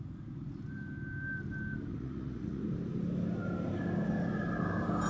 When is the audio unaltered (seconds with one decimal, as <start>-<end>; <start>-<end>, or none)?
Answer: 0.0-1.9; 2.6-5.1